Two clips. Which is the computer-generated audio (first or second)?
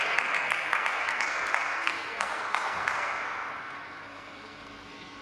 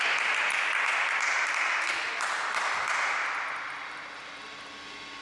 first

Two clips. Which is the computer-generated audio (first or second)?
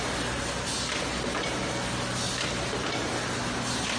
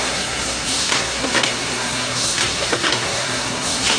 second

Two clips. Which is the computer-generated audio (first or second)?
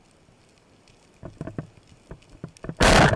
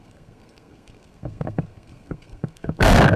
second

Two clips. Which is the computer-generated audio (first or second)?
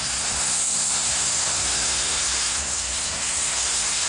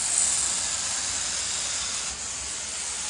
first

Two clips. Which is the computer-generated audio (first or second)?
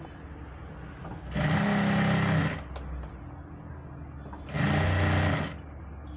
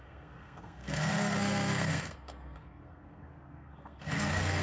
second